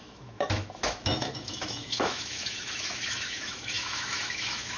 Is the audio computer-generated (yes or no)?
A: yes